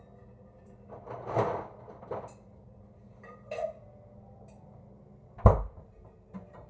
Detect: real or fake real